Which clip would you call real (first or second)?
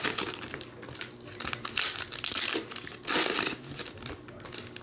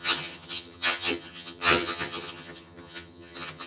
first